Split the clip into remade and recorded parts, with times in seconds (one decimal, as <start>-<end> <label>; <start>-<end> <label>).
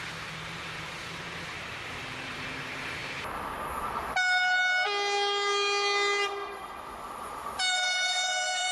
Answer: 0.0-3.0 remade; 3.0-7.1 recorded; 7.1-8.7 remade